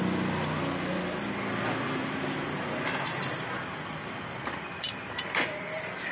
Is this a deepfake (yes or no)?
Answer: no